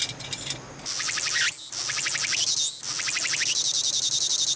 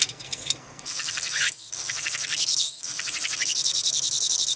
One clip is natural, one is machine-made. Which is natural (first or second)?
first